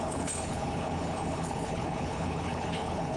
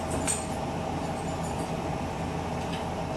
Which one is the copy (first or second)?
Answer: first